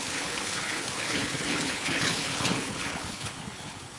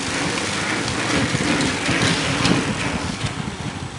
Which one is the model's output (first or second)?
first